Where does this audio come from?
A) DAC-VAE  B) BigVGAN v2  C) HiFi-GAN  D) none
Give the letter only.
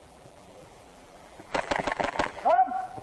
B